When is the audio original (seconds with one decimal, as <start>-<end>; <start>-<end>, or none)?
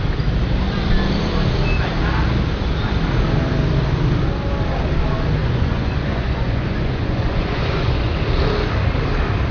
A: 0.0-5.4; 8.1-9.5